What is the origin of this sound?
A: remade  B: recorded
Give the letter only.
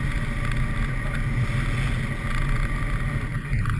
B